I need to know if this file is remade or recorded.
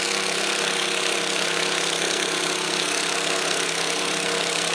remade